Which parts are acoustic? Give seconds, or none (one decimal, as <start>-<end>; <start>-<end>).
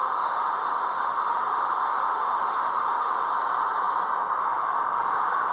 3.3-4.4